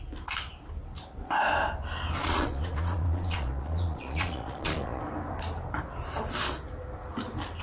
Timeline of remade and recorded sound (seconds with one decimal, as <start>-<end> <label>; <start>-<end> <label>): 0.0-2.2 recorded; 2.2-5.0 remade; 5.0-7.6 recorded

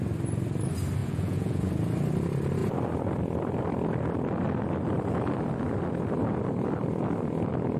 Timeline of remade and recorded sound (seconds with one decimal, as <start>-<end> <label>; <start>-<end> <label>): 0.0-1.0 recorded; 1.0-1.7 remade; 1.7-7.8 recorded